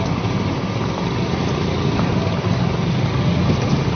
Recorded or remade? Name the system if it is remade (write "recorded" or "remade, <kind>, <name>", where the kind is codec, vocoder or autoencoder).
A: recorded